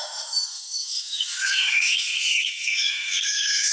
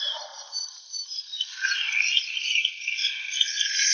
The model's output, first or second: first